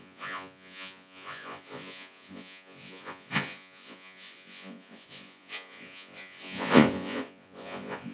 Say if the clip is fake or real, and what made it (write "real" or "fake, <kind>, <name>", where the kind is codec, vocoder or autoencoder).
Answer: fake, vocoder, Vocos